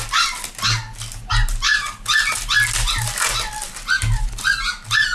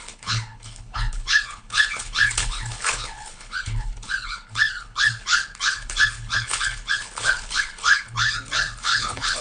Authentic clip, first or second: first